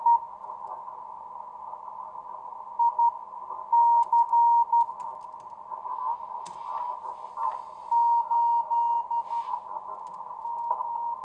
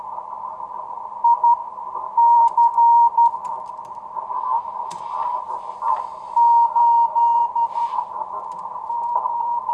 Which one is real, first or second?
first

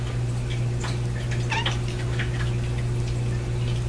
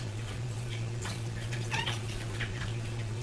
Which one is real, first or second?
first